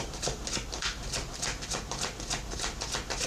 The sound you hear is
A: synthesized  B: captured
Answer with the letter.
B